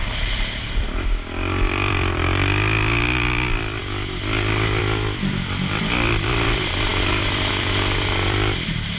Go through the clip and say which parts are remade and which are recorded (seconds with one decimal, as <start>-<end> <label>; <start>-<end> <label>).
0.0-9.0 remade